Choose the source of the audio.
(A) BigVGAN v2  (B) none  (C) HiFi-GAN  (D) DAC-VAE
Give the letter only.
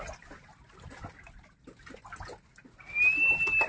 B